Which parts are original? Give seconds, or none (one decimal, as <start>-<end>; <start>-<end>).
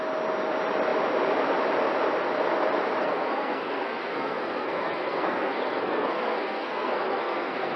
0.0-3.0